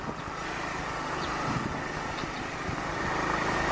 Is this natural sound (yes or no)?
yes